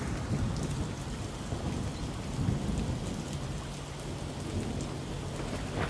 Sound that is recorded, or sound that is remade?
recorded